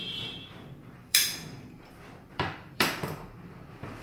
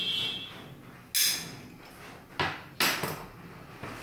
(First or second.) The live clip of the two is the second